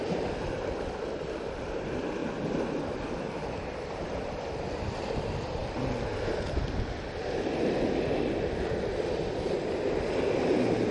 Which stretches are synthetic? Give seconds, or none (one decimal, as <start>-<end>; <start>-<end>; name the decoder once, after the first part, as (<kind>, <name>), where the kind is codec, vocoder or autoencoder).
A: 2.2-4.4 (vocoder, BigVGAN v2); 5.6-6.8